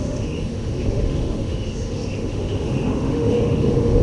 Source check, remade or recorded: remade